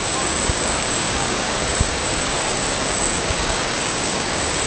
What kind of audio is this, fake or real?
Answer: fake